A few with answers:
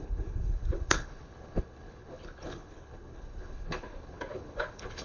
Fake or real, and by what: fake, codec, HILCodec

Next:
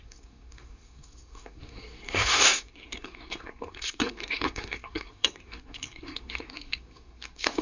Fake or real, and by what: fake, codec, SNAC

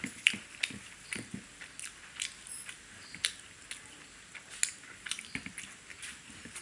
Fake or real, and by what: real